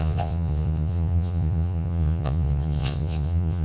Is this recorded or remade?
remade